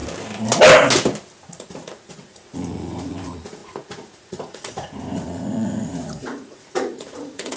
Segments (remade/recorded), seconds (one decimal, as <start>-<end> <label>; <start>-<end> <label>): 0.0-1.5 recorded; 1.5-7.6 remade